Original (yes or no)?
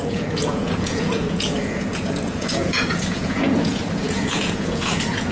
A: no